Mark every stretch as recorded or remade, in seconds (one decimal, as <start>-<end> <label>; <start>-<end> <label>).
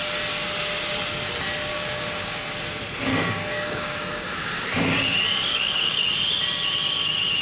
0.0-1.7 recorded; 1.7-2.5 remade; 2.5-3.1 recorded; 3.1-4.3 remade; 4.3-5.5 recorded; 5.5-6.0 remade; 6.0-7.4 recorded